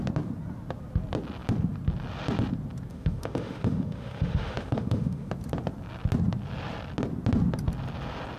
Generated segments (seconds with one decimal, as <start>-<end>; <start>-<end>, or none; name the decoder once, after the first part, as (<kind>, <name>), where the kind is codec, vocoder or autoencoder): 2.9-5.3 (autoencoder, DAC-VAE)